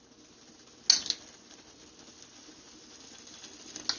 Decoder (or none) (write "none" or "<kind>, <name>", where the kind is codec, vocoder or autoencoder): none